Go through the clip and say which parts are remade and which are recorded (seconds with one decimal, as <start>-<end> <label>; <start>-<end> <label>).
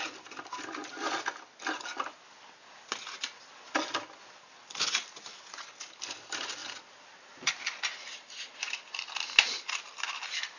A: 0.0-10.6 recorded